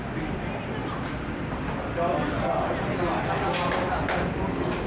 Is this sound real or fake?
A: real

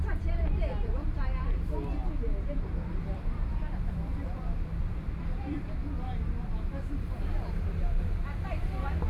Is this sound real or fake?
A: fake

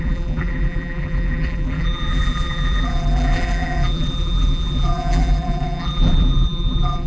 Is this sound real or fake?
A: fake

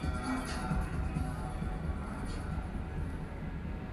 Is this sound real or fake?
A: real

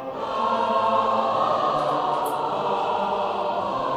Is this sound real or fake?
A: real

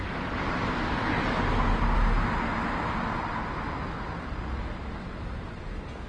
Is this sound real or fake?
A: real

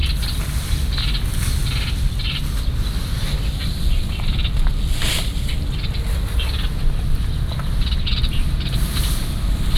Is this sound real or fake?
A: real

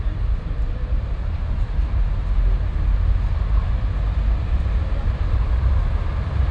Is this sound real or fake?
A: real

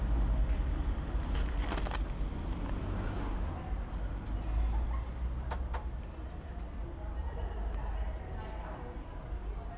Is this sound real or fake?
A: real